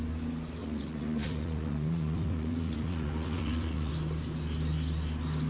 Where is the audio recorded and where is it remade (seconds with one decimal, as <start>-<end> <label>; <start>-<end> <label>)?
0.0-0.6 recorded; 0.6-3.9 remade; 3.9-5.5 recorded